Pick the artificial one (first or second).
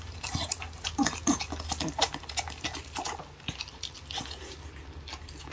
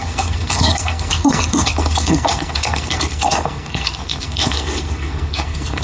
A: second